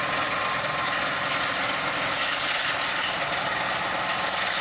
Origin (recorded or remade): recorded